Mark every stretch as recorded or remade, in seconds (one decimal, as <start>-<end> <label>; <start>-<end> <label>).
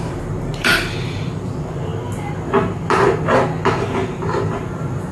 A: 0.0-0.7 remade; 0.7-1.5 recorded; 1.5-1.9 remade; 1.9-5.1 recorded